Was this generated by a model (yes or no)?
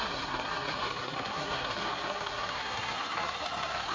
yes